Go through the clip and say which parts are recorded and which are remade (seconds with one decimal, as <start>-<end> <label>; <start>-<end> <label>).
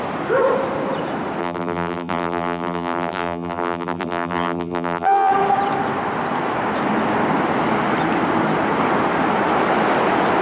0.0-1.4 recorded; 1.4-5.3 remade; 5.3-10.4 recorded